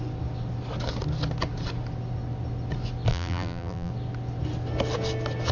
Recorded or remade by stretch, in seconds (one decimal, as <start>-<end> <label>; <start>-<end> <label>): 0.0-3.1 recorded; 3.1-3.9 remade; 3.9-5.5 recorded